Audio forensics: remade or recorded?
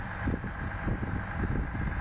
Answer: recorded